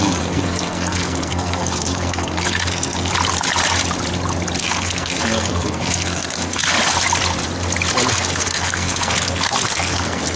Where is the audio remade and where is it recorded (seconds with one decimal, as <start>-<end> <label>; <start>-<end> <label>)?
0.0-3.1 remade; 3.1-4.6 recorded; 4.6-6.6 remade; 6.6-8.1 recorded; 8.1-10.4 remade